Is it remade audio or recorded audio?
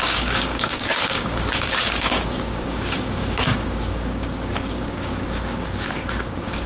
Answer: remade